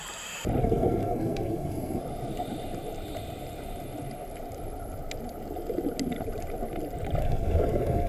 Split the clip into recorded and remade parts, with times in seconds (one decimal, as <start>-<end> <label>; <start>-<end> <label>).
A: 0.0-0.6 recorded; 0.6-2.0 remade; 2.0-7.2 recorded; 7.2-8.1 remade